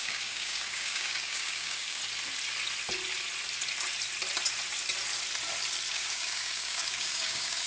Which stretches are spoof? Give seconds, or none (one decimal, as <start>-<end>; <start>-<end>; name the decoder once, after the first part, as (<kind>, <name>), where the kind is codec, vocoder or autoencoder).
0.0-2.0 (codec, DAC); 5.9-7.7